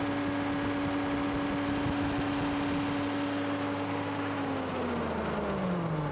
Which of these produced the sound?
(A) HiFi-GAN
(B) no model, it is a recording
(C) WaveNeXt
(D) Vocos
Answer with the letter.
B